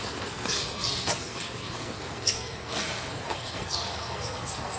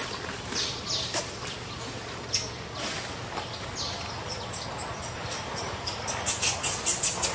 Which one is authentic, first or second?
second